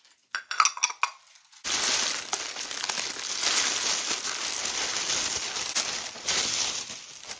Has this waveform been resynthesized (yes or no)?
no